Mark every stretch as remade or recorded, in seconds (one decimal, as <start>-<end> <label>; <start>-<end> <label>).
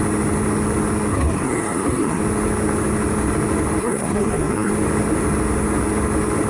0.0-1.1 recorded; 1.1-2.2 remade; 2.2-3.8 recorded; 3.8-4.7 remade; 4.7-6.5 recorded